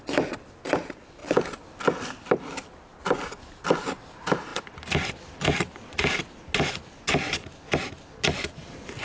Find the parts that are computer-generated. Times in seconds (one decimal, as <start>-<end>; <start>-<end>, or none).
none